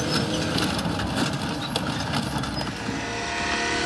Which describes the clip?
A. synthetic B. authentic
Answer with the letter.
B